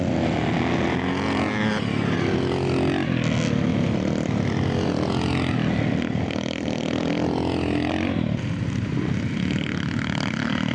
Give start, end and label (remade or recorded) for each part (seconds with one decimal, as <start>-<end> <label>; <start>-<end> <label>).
0.0-10.7 recorded